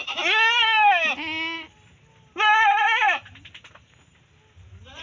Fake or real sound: real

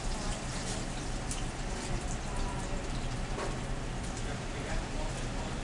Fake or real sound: fake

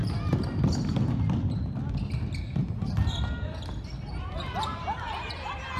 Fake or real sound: real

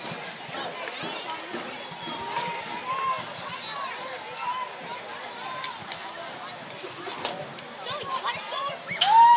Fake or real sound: real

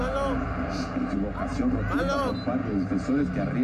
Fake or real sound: real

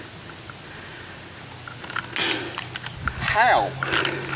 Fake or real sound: real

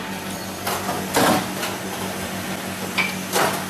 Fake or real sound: real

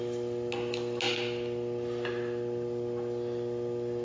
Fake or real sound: real